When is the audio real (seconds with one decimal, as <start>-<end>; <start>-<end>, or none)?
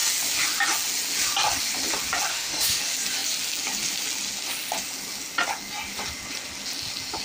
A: 0.0-2.3; 2.8-7.2